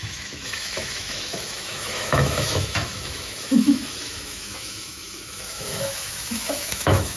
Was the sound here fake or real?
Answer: fake